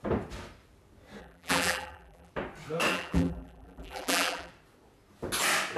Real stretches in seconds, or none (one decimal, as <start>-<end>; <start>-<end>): 0.0-1.2; 2.3-2.9; 4.5-5.8

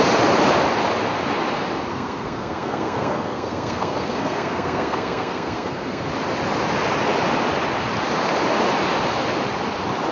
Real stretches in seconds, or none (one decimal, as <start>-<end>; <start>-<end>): 0.0-1.9; 6.1-10.1

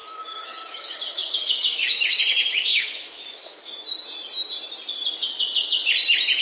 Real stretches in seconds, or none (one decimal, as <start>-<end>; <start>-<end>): 2.2-2.7; 3.7-6.4

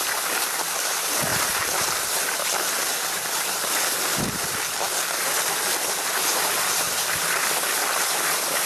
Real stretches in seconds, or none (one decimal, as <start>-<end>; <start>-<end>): 0.0-8.7

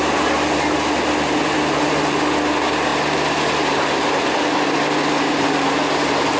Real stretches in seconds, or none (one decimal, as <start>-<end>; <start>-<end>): 0.0-1.4; 2.2-6.4

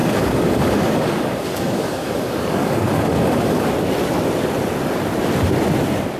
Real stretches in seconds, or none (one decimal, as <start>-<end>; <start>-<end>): 3.7-6.2

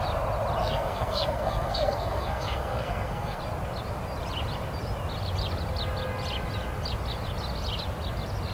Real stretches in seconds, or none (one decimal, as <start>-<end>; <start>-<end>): 0.0-0.6; 3.4-8.5